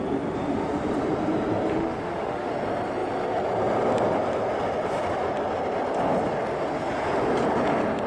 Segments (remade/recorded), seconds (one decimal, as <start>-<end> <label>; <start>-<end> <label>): 0.0-1.7 recorded; 1.7-2.5 remade; 2.5-8.1 recorded